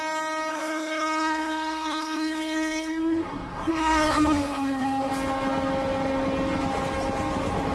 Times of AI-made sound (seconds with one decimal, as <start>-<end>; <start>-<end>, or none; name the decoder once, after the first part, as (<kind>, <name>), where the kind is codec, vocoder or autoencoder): 0.5-5.1 (codec, SNAC)